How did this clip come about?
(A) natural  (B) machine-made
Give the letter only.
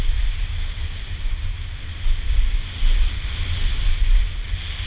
A